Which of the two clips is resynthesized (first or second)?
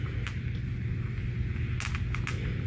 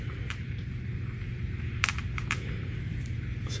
second